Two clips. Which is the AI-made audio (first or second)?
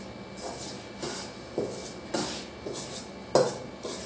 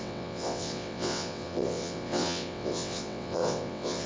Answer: second